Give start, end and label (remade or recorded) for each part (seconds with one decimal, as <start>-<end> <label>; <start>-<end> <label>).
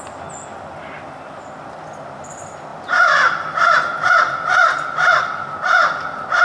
0.0-6.4 recorded